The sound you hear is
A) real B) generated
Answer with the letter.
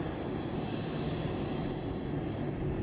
A